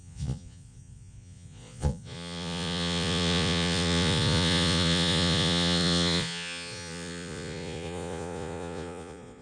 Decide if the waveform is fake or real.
fake